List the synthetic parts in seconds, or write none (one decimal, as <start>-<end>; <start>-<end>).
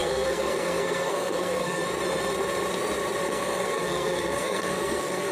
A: 0.0-1.8; 3.3-5.3